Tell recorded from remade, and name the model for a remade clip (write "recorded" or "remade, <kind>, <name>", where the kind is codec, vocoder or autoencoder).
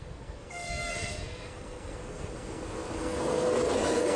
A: remade, codec, SNAC